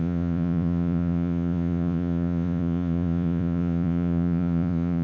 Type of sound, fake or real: fake